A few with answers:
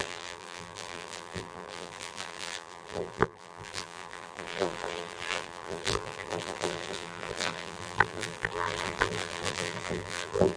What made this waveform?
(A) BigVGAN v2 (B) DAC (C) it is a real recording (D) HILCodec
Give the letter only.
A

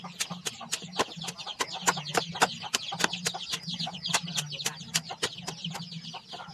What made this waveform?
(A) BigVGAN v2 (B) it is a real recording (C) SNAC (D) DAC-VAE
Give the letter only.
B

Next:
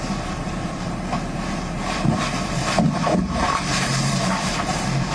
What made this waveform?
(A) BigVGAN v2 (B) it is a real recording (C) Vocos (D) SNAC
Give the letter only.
A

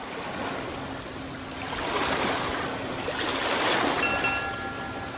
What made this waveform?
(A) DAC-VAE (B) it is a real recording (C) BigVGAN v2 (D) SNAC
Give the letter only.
B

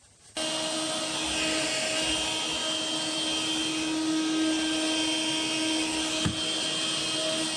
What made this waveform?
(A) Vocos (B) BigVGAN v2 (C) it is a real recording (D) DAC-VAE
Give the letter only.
C